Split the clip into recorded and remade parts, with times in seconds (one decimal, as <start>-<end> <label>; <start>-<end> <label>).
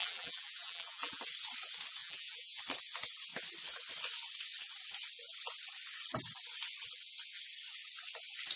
0.0-1.2 remade; 1.2-2.0 recorded; 2.0-2.6 remade; 2.6-8.6 recorded